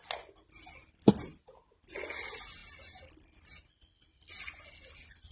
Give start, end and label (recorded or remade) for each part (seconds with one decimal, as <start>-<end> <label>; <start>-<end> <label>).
0.0-5.3 recorded